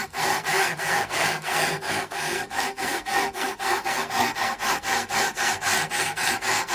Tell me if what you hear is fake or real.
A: fake